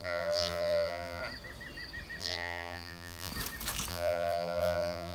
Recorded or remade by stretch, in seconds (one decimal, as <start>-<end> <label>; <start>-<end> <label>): 0.0-1.2 remade; 1.2-2.2 recorded; 2.2-3.3 remade; 3.3-3.9 recorded; 3.9-5.1 remade